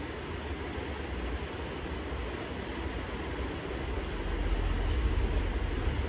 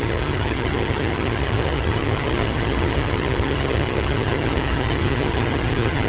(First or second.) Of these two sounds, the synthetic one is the second